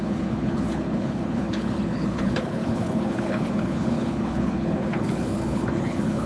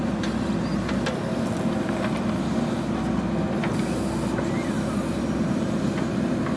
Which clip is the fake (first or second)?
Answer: first